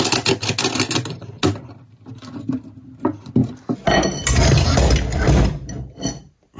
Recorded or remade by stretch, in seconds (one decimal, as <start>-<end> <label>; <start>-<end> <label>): 0.0-6.6 recorded